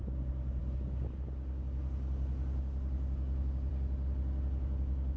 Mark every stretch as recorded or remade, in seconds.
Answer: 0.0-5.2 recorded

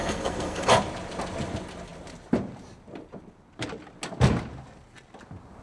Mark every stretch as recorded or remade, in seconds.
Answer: 0.0-0.7 remade; 0.7-5.6 recorded

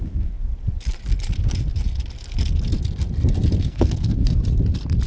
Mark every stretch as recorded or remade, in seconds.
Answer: 0.0-0.5 remade; 0.5-3.6 recorded; 3.6-4.4 remade; 4.4-5.1 recorded

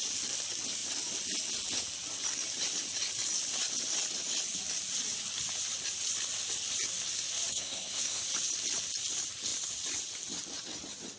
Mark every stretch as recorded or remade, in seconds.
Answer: 0.0-7.5 recorded; 7.5-8.2 remade; 8.2-11.2 recorded

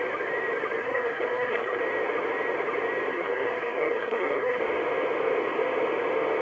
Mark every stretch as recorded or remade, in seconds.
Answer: 0.0-0.8 recorded; 0.8-1.8 remade; 1.8-3.1 recorded; 3.1-4.6 remade; 4.6-6.4 recorded

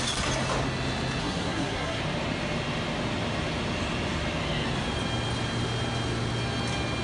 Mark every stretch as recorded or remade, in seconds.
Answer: 0.0-1.2 recorded; 1.2-2.0 remade; 2.0-7.0 recorded

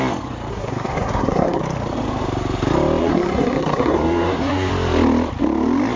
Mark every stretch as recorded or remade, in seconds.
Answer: 0.0-0.5 recorded; 0.5-1.6 remade; 1.6-3.0 recorded; 3.0-4.7 remade; 4.7-6.0 recorded